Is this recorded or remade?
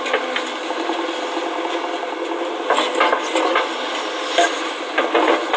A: recorded